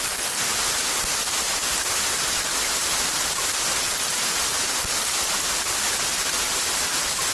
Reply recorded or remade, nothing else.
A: recorded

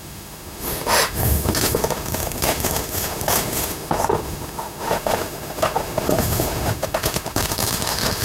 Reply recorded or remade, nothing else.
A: remade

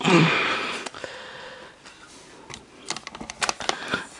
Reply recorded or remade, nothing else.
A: recorded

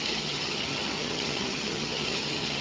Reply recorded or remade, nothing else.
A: remade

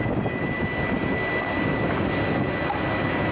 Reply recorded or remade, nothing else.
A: recorded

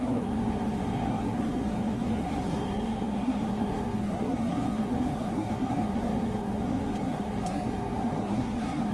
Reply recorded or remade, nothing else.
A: remade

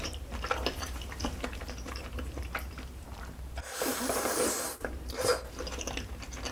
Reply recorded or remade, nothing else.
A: remade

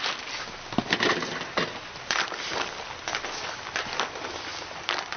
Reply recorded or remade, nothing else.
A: recorded